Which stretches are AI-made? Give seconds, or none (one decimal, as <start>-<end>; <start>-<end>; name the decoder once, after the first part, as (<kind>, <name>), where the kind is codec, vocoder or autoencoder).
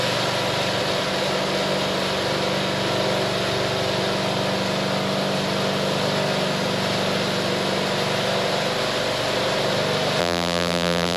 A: 10.2-11.2 (vocoder, BigVGAN v2)